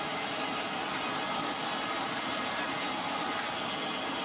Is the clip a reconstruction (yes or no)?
no